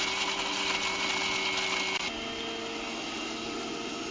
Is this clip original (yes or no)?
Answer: yes